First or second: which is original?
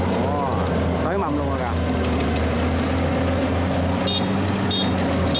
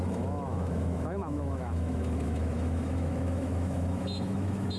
first